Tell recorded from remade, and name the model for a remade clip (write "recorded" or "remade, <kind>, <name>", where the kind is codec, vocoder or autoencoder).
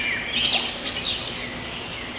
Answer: recorded